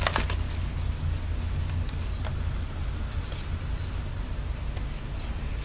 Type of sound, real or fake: real